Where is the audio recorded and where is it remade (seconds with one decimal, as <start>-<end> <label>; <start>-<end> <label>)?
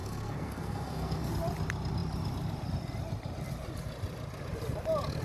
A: 0.0-1.3 remade; 1.3-5.2 recorded